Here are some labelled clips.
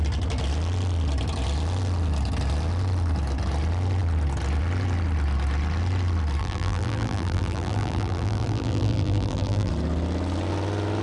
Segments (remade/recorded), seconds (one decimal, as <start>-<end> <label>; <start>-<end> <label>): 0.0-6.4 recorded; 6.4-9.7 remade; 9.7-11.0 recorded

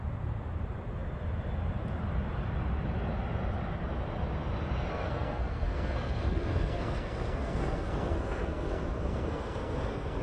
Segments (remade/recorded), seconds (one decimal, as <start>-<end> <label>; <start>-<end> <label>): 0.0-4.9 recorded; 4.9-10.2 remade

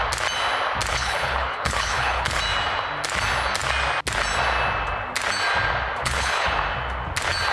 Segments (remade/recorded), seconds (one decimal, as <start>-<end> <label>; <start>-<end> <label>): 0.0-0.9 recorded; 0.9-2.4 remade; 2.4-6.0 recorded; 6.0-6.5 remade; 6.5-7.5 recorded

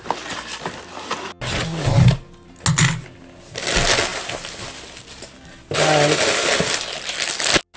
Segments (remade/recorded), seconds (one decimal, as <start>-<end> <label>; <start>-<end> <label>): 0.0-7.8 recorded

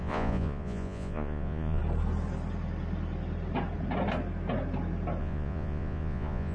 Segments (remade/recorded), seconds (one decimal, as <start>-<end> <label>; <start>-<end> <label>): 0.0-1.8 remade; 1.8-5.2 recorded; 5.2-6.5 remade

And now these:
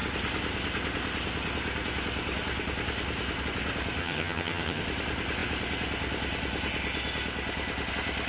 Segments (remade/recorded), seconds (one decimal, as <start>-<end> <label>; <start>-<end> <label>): 0.0-4.0 recorded; 4.0-4.8 remade; 4.8-8.3 recorded